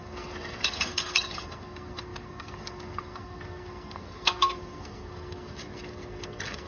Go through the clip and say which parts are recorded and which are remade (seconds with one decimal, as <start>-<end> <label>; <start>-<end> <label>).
0.0-6.7 remade